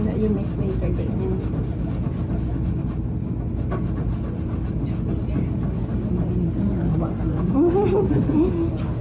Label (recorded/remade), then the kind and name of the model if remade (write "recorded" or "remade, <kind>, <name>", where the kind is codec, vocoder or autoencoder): recorded